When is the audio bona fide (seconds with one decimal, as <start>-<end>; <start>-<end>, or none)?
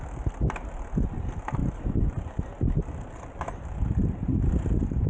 0.0-5.1